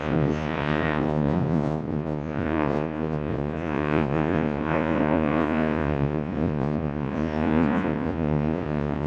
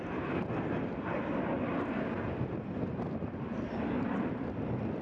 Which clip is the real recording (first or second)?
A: second